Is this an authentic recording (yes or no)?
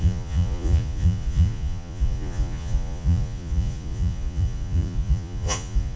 no